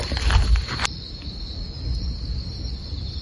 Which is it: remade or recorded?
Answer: recorded